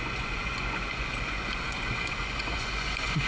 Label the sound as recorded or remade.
remade